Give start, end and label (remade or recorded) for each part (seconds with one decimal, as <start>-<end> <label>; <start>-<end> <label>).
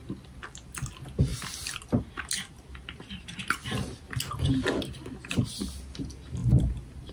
0.0-6.4 recorded; 6.4-7.1 remade